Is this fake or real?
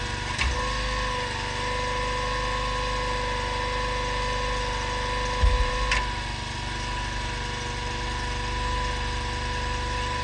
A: real